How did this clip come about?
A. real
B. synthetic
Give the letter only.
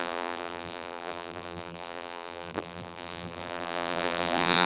B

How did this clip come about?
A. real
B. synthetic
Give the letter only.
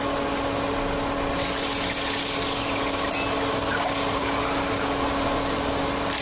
A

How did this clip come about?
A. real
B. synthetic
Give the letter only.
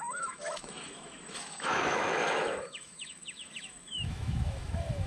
B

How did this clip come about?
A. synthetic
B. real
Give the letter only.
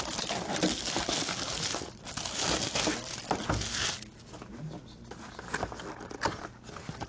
B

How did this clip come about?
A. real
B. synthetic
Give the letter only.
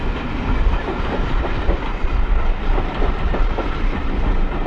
A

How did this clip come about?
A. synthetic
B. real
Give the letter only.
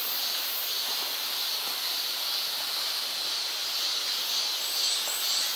B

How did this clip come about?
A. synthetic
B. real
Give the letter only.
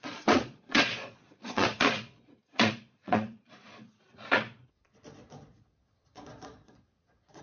A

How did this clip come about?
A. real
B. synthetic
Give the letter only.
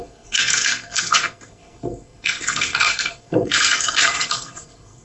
B